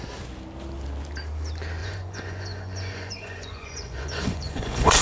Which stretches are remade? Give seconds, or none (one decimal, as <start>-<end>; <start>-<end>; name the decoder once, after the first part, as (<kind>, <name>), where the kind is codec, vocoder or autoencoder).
1.8-5.0 (vocoder, Vocos)